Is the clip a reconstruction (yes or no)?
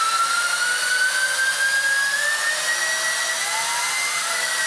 no